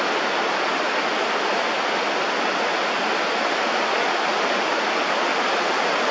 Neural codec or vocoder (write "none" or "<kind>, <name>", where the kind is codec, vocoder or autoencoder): none